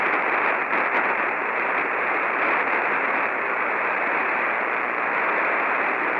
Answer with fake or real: real